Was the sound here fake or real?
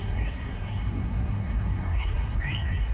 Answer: fake